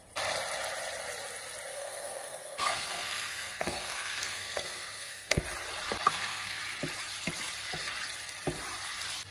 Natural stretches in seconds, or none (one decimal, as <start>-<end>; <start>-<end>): 0.0-1.7; 5.4-6.1; 6.6-9.3